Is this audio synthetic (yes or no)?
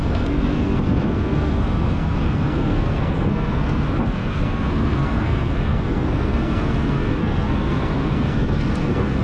yes